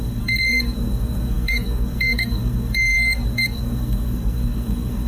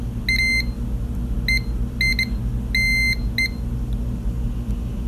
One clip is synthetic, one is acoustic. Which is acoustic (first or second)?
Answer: second